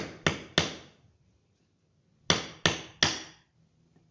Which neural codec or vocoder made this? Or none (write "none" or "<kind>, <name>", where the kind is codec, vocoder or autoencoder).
none